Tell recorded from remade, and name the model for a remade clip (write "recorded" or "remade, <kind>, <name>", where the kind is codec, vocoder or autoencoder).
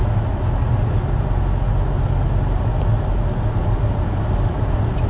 recorded